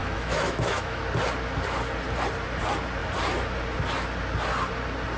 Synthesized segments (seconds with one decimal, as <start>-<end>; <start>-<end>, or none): 0.0-1.0